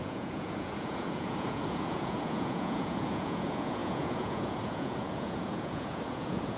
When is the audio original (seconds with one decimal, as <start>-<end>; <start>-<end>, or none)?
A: none